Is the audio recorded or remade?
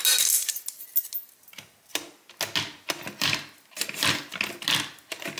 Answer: recorded